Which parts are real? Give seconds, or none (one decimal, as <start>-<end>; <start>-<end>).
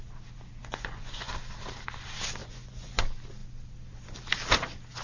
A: 0.0-0.6; 1.3-2.4; 3.0-5.0